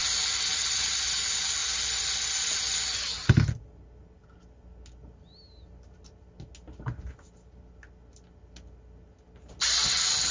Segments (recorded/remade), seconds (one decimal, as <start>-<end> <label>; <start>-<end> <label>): 0.0-10.3 recorded